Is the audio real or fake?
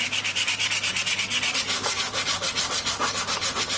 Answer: fake